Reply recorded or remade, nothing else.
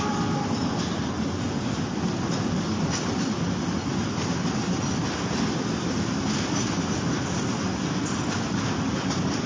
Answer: recorded